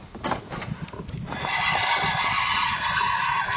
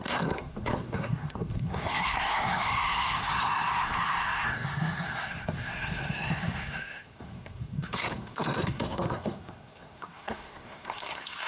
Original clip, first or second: first